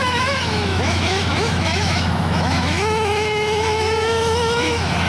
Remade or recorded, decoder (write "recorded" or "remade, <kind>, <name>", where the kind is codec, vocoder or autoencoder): remade, autoencoder, DAC-VAE